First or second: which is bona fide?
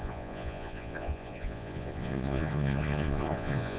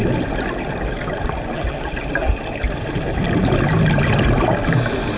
second